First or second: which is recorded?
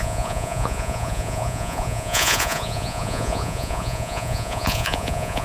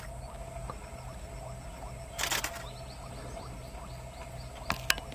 second